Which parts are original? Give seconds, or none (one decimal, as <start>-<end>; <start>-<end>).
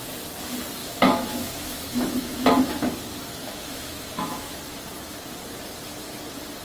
0.0-0.8; 2.7-3.4; 4.6-6.6